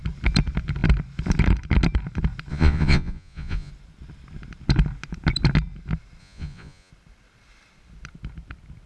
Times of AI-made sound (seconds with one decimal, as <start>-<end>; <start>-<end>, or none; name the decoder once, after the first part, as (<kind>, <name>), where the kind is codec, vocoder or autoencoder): 2.5-3.7 (vocoder, Vocos); 6.2-6.9